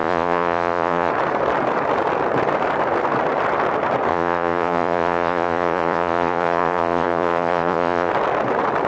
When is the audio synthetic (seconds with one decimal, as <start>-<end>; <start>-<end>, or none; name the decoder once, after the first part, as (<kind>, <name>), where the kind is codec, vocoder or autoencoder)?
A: 0.0-1.1 (vocoder, Vocos); 4.1-8.1